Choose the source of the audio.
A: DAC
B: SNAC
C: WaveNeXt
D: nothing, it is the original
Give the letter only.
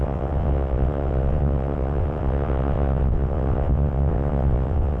C